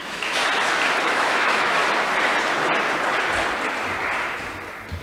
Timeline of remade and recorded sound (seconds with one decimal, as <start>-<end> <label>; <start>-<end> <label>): 0.0-0.4 remade; 0.4-1.0 recorded; 1.0-1.8 remade; 1.8-5.0 recorded